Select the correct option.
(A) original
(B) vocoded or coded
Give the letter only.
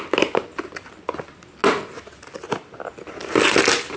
A